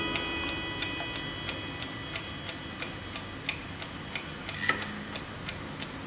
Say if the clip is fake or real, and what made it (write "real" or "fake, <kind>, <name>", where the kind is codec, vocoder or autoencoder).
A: real